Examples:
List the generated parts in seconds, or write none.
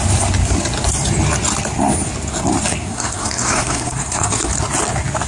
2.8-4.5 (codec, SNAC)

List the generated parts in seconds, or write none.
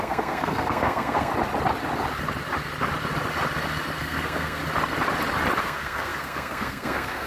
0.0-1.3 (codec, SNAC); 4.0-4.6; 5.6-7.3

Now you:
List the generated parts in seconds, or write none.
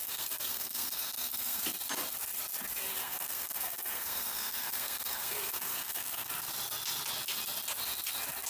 0.0-1.6 (codec, SNAC); 3.0-6.3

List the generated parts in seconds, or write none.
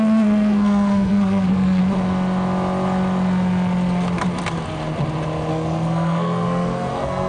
0.0-1.8 (codec, SNAC); 5.5-7.3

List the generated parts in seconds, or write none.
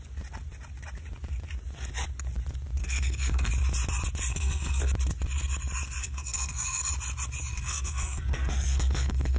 2.8-3.5 (codec, SNAC); 4.3-4.8; 6.0-6.9; 7.5-9.4